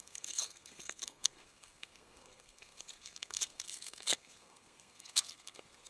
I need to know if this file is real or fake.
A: fake